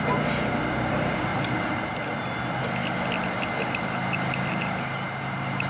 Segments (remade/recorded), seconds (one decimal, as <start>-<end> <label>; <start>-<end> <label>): 0.0-1.3 recorded; 1.3-2.6 remade; 2.6-5.7 recorded